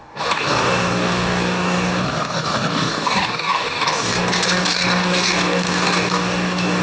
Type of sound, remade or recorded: remade